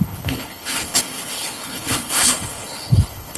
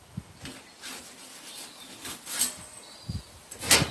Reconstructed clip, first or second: first